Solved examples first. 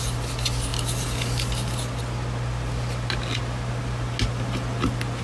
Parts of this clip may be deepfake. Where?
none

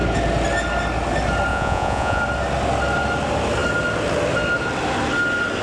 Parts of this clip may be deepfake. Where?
1.5-2.2

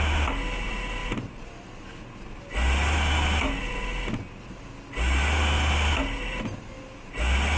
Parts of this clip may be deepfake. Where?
none

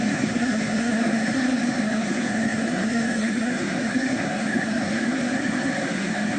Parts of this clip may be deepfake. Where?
0.0-6.4

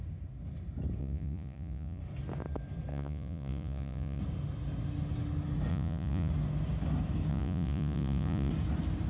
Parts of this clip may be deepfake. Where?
1.0-2.0; 2.9-4.2; 5.7-6.3; 7.3-8.5

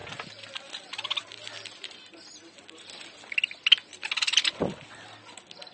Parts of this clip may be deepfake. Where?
none